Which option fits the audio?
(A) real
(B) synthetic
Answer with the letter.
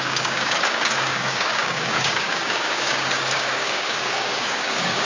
B